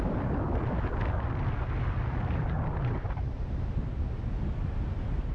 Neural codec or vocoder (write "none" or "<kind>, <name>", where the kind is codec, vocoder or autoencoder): none